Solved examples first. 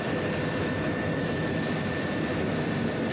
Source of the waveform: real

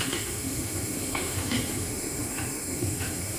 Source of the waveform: fake